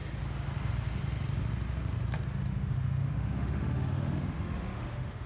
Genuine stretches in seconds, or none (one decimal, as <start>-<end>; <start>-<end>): 0.0-2.5